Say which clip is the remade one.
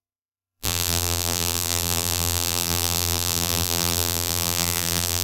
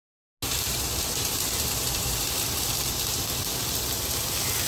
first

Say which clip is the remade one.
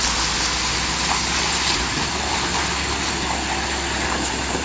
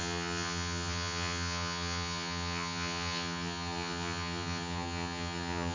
second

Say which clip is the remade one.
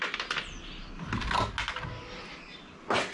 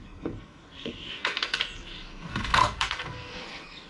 second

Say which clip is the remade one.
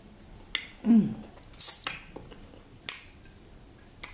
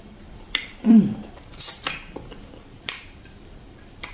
second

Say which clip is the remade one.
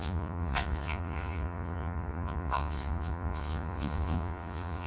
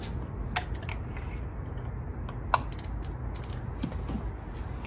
first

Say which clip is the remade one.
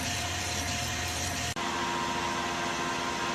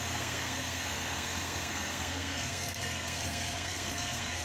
second